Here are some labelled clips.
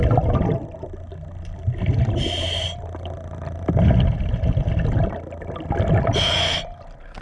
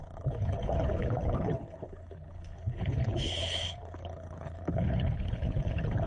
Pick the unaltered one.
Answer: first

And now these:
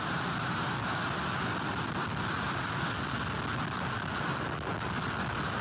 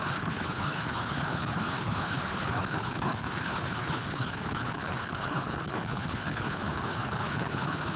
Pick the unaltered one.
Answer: first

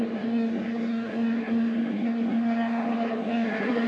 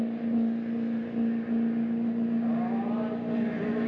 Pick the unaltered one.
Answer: second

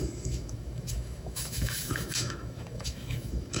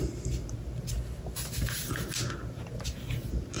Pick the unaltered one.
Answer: second